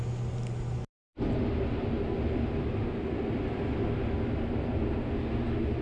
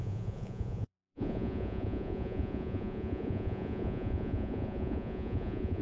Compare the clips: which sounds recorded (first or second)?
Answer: first